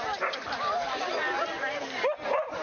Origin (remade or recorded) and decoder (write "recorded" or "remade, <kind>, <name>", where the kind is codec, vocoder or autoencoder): recorded